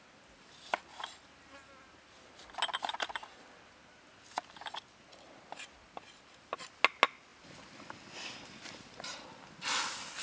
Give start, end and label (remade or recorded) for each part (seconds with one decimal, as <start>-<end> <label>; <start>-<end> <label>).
0.0-10.2 recorded